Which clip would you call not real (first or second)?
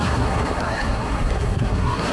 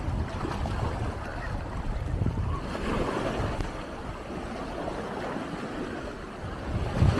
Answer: first